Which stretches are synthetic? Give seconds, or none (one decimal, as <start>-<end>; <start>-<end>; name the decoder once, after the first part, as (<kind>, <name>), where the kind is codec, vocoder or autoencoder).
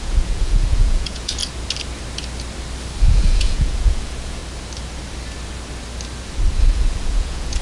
0.0-1.4 (vocoder, Vocos); 3.1-4.4; 6.7-7.6